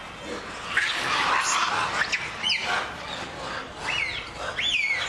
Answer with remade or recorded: recorded